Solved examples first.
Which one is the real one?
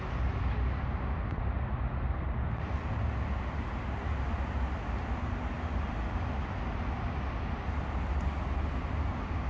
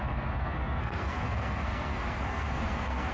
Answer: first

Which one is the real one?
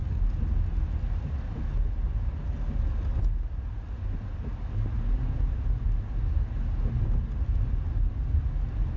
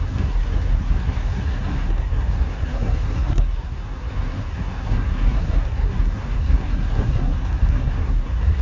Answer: first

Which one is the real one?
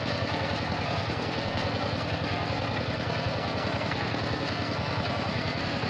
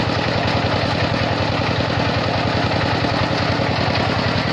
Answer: second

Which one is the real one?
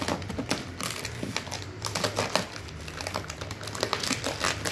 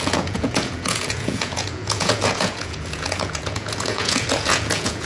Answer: first